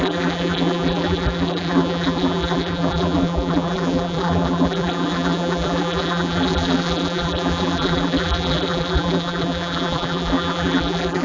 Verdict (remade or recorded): remade